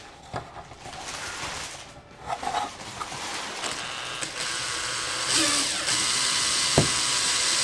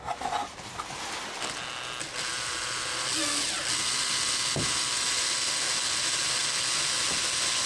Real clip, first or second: second